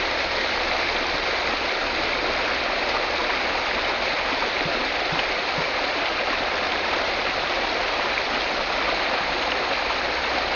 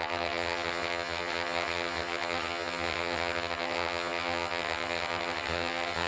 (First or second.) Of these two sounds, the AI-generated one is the second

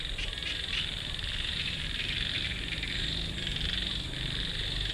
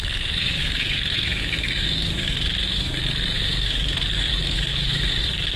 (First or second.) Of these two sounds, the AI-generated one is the second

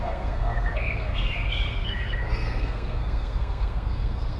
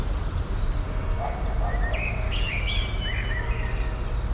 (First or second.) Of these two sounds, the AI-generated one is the first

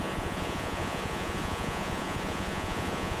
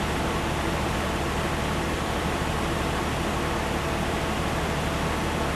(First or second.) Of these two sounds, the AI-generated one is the first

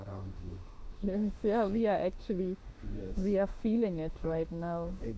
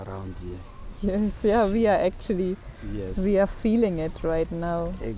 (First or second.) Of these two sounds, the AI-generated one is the first